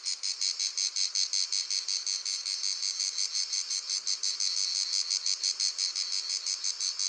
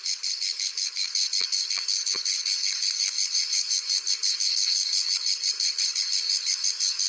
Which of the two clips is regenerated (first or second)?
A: second